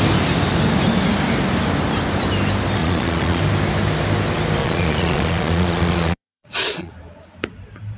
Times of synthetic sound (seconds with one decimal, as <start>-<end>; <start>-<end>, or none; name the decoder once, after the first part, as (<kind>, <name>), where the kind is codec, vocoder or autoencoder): 2.8-3.4 (vocoder, Vocos); 4.6-6.9